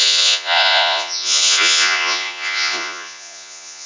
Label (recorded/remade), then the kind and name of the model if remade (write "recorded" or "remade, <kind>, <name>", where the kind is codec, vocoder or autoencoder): remade, vocoder, Vocos